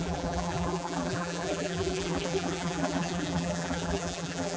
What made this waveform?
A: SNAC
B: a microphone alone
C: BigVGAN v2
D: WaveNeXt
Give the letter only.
C